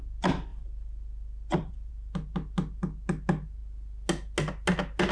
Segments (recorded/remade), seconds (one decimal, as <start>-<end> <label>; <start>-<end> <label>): 0.0-0.5 recorded; 0.5-1.9 remade; 1.9-5.1 recorded